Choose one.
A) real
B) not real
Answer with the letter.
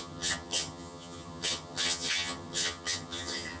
B